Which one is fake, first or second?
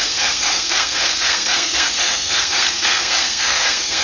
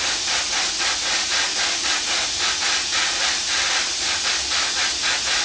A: first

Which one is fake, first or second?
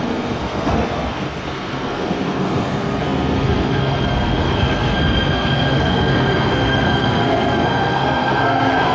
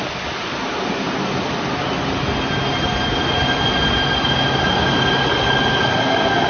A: first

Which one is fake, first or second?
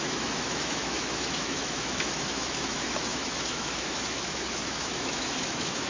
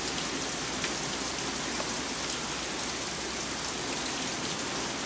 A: first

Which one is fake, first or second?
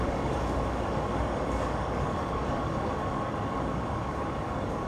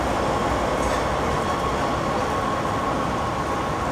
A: first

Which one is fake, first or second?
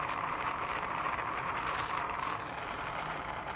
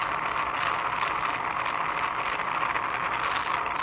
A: first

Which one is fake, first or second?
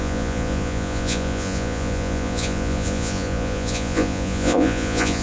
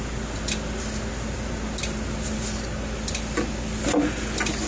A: first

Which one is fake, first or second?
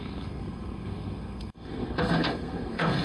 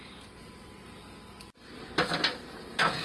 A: first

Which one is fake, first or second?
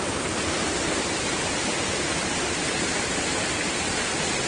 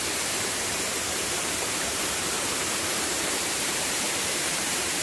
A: second